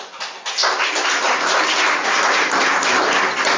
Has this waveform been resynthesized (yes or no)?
no